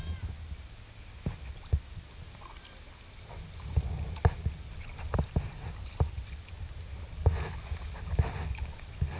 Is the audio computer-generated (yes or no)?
no